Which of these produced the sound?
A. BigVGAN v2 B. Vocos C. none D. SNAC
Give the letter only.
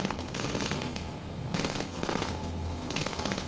D